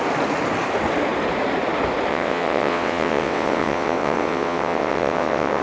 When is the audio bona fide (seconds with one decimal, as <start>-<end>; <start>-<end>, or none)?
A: 0.0-2.1